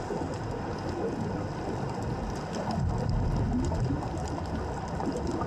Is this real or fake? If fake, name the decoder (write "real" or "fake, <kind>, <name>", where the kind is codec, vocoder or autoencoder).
real